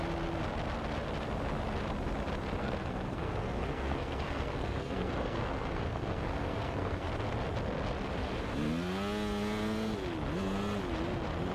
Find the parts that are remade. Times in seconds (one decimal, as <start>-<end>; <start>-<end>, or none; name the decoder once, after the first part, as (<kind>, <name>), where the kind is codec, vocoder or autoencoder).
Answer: 2.6-7.1 (codec, SNAC)